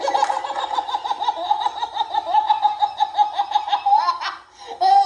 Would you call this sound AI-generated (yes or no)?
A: no